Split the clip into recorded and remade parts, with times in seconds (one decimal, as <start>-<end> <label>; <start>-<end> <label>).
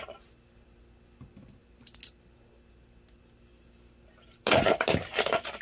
0.0-5.6 recorded